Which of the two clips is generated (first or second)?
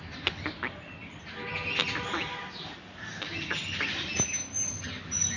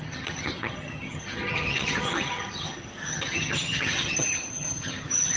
second